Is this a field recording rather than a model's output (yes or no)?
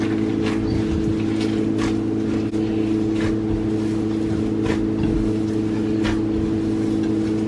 yes